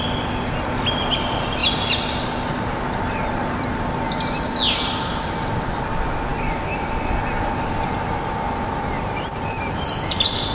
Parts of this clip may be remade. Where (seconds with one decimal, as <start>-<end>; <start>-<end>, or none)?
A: none